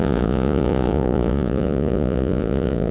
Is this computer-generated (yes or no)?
yes